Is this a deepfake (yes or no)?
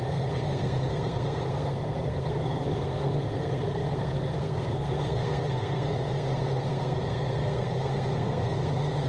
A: yes